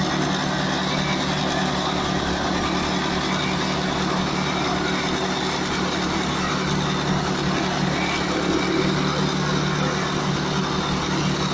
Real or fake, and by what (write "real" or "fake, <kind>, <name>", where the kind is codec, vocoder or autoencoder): real